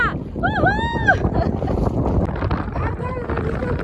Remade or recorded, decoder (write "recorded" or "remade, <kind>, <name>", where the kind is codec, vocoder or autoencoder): recorded